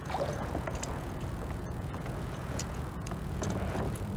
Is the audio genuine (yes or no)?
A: no